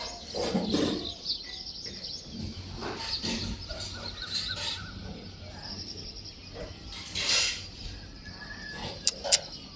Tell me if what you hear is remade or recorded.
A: recorded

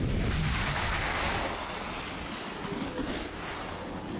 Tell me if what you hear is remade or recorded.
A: recorded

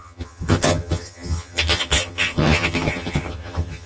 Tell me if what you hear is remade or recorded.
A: remade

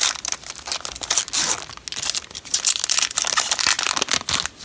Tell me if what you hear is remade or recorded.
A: recorded